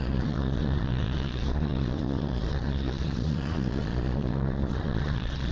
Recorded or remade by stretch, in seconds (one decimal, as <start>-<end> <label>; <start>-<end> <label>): 0.0-5.5 remade